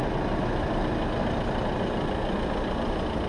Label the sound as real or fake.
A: real